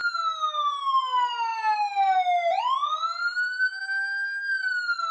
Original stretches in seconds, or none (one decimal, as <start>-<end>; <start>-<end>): 0.8-3.2; 3.8-5.1